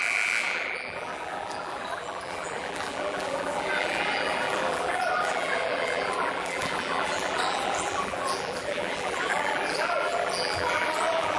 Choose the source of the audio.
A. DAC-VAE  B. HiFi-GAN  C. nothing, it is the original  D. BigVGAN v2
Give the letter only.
D